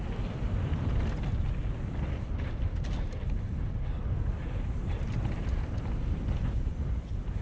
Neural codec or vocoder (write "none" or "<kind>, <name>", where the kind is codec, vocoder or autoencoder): none